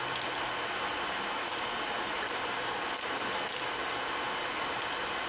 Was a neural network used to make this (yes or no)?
yes